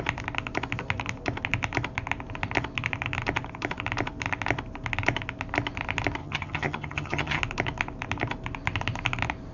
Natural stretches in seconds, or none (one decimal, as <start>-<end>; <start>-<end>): 0.0-6.2; 7.4-9.5